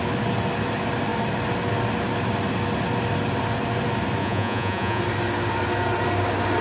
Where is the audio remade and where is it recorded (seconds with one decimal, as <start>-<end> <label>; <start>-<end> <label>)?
0.0-4.2 recorded; 4.2-5.0 remade; 5.0-6.6 recorded